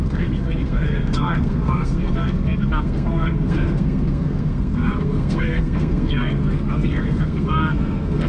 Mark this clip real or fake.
fake